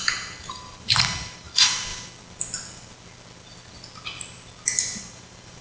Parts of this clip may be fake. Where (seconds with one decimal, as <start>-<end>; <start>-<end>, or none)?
0.0-1.9; 5.0-5.6